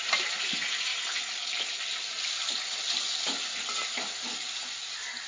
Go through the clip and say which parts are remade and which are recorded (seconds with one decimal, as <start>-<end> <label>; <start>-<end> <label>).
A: 0.0-5.3 recorded